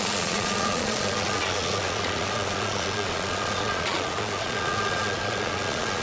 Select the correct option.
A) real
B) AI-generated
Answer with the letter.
B